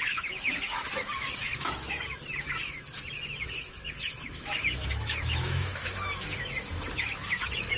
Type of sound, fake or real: fake